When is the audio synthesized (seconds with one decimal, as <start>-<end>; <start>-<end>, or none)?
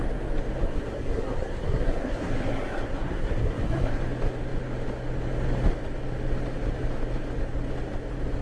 0.6-4.0